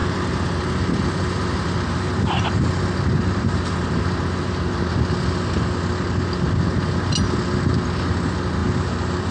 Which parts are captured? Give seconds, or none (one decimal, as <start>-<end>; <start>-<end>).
5.0-9.3